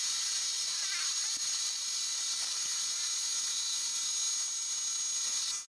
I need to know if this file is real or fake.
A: real